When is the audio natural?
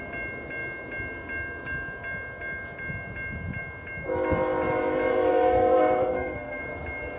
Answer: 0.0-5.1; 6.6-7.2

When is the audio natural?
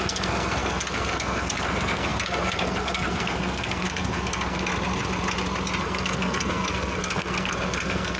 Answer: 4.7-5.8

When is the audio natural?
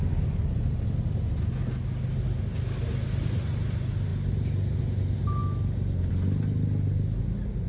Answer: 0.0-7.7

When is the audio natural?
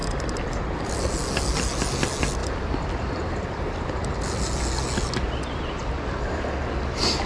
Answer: 0.0-7.3